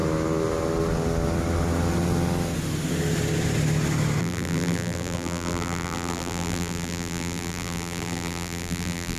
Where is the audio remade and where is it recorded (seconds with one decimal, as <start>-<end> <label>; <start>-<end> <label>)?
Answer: 0.0-4.2 recorded; 4.2-9.2 remade